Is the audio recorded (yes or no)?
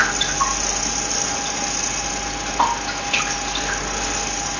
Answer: yes